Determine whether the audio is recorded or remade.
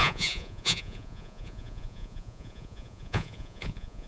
remade